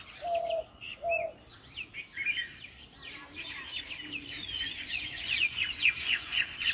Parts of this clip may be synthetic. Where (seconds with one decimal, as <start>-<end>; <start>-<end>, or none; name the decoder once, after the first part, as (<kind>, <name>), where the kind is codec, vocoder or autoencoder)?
4.2-6.7 (vocoder, Vocos)